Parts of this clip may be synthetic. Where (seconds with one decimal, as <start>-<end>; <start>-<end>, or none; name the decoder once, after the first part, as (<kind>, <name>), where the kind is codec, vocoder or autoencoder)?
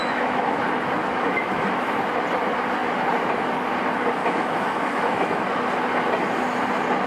0.0-0.6 (autoencoder, DAC-VAE); 1.0-2.0; 4.2-5.4